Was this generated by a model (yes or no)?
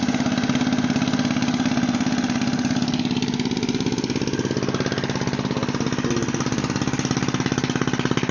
no